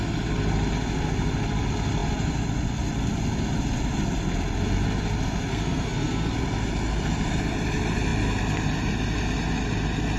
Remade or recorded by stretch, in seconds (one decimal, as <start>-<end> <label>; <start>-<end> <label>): 0.0-5.5 recorded; 5.5-6.3 remade; 6.3-10.2 recorded